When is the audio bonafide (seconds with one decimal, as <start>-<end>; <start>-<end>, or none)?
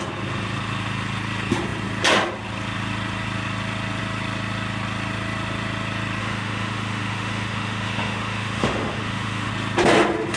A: 0.0-6.2; 9.5-10.4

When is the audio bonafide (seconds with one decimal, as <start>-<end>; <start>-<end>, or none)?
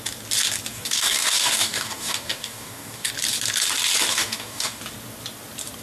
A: 0.0-0.7; 3.1-4.1; 4.8-5.8